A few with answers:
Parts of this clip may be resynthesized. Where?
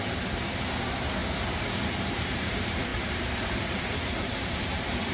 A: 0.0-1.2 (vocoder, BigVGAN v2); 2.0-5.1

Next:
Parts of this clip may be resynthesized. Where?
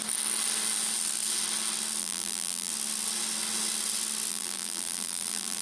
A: 2.0-2.7 (vocoder, BigVGAN v2); 4.3-5.6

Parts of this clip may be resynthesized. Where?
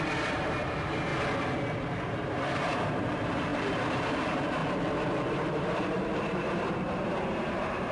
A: 0.0-1.1 (vocoder, BigVGAN v2); 1.9-4.6; 5.7-7.9